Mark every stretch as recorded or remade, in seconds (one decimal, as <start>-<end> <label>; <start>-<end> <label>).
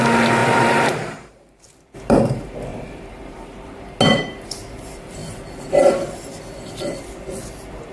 0.0-0.4 recorded; 0.4-1.6 remade; 1.6-2.7 recorded; 2.7-3.8 remade; 3.8-7.9 recorded